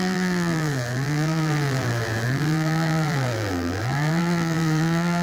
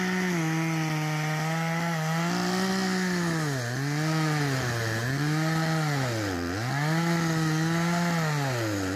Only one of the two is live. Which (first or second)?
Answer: second